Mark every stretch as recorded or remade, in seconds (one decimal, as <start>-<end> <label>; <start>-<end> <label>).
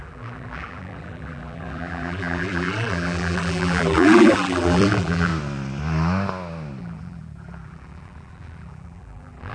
0.0-5.3 remade; 5.3-6.8 recorded; 6.8-9.5 remade